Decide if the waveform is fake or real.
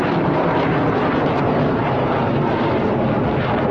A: fake